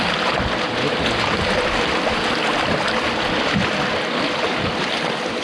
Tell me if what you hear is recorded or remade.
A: recorded